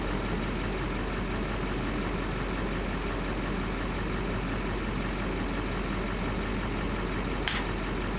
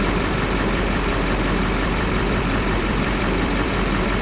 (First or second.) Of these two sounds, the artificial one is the second